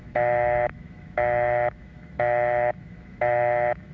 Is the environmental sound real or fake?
fake